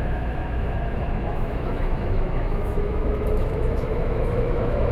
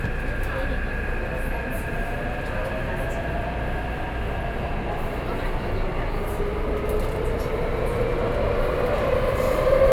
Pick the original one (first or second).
second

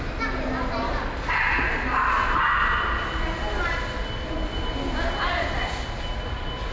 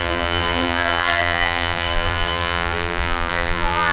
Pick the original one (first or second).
first